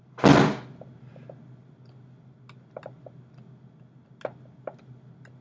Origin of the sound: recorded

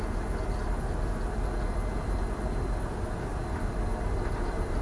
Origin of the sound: recorded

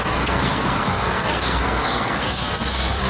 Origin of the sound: remade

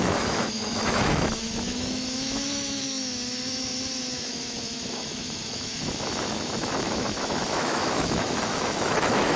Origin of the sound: remade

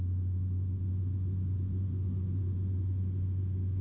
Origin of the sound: recorded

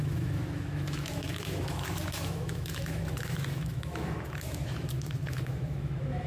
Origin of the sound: remade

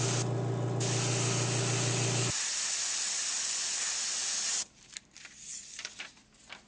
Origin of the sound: recorded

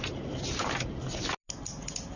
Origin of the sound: recorded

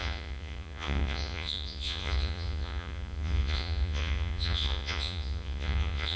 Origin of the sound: remade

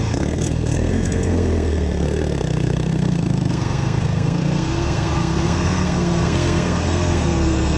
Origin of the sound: remade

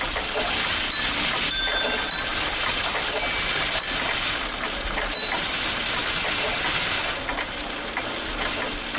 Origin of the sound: recorded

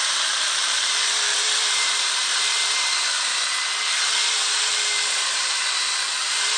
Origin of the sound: remade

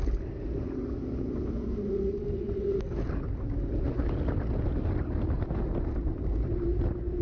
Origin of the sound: recorded